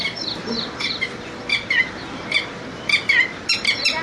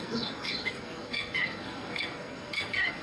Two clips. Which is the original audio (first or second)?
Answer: first